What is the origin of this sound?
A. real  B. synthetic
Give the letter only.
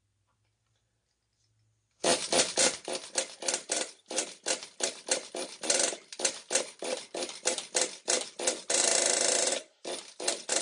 A